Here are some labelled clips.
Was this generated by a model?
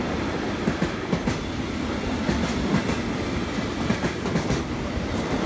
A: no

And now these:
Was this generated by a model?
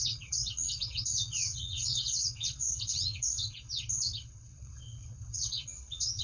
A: yes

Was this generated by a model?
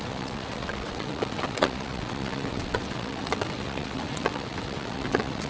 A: yes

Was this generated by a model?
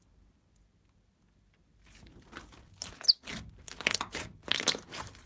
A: no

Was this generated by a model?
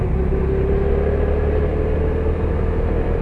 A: no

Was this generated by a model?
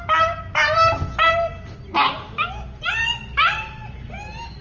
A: no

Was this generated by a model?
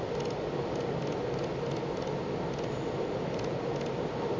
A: no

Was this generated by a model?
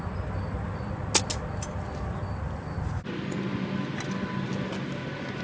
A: no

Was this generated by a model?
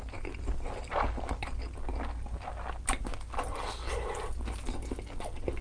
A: no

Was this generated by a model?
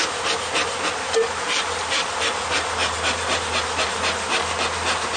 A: no